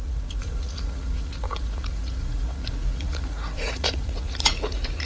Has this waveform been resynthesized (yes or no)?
yes